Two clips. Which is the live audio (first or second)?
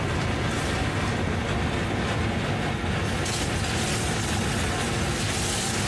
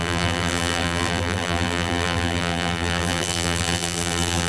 first